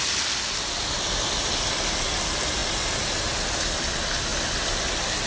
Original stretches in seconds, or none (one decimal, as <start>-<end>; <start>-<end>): 0.0-5.3